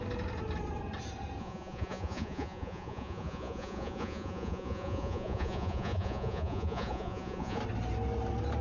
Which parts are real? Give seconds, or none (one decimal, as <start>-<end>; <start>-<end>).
0.0-1.4; 7.6-8.6